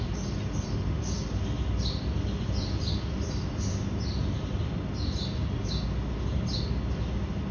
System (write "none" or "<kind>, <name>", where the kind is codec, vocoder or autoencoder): none